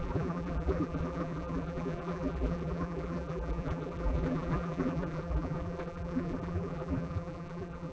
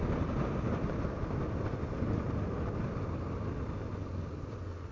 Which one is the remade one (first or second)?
first